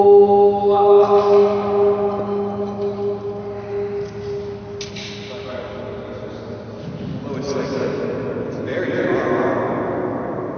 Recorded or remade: recorded